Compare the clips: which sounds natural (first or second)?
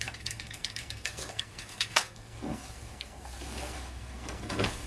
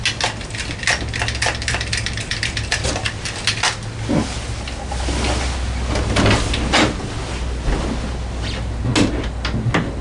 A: second